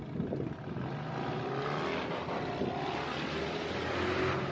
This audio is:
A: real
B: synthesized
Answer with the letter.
A